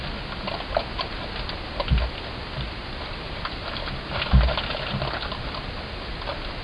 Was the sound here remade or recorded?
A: recorded